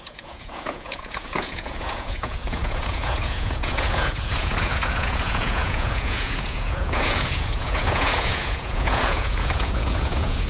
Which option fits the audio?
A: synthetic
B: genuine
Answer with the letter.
A